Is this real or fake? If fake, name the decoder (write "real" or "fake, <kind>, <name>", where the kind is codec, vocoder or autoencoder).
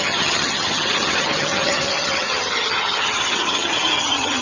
fake, vocoder, HiFi-GAN